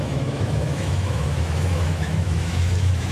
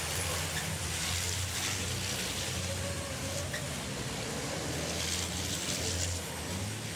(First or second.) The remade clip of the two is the first